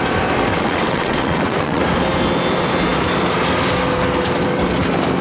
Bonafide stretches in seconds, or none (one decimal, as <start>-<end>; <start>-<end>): 0.0-0.5; 1.8-5.2